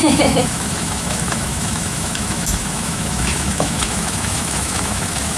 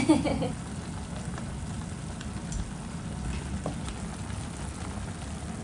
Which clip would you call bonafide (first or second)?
second